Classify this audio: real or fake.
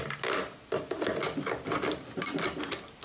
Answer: real